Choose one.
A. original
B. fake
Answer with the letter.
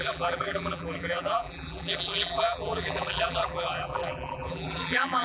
B